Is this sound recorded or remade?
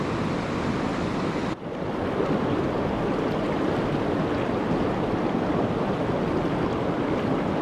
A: recorded